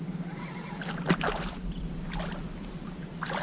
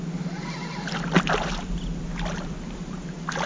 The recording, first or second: second